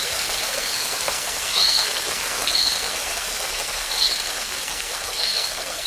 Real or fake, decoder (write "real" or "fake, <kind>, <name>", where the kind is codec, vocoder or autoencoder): fake, codec, SNAC